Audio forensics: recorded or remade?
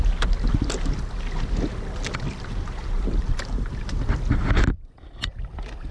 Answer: recorded